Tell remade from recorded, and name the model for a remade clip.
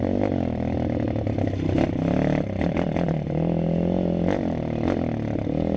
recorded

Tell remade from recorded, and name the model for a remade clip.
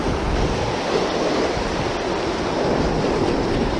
recorded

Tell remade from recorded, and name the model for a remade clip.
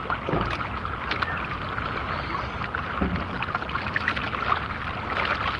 recorded